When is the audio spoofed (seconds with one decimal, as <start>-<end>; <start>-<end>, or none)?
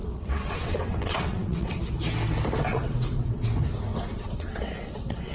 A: 0.0-1.8; 2.7-3.5; 3.9-5.3